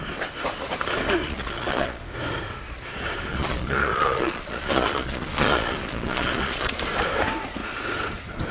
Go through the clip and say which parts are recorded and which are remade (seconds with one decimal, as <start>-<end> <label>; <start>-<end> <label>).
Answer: 0.0-1.2 recorded; 1.2-2.0 remade; 2.0-3.3 recorded; 3.3-6.7 remade; 6.7-8.5 recorded